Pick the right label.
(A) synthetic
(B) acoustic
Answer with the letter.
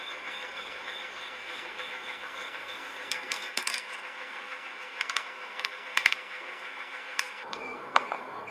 A